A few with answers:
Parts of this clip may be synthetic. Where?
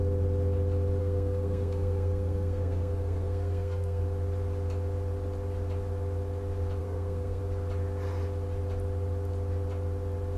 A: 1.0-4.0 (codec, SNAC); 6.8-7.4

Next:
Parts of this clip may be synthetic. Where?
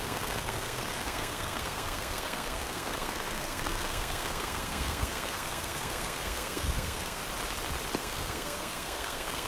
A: 0.0-7.2 (codec, SNAC); 8.0-9.5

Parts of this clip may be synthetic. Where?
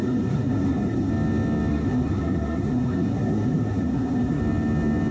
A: 0.0-1.1 (codec, SNAC); 1.7-4.4